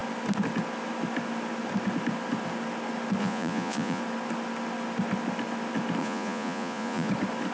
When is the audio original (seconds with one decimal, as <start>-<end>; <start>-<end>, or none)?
0.0-3.2; 4.0-6.0; 7.1-7.5